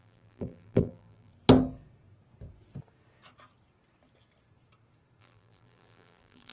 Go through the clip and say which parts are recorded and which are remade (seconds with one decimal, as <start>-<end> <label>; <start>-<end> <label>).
0.0-1.3 remade; 1.3-5.2 recorded; 5.2-6.5 remade